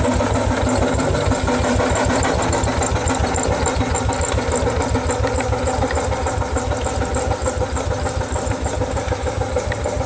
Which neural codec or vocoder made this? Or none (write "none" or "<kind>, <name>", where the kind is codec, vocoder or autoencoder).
none